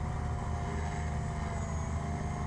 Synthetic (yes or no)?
no